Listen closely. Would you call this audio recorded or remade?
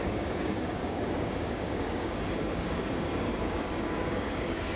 remade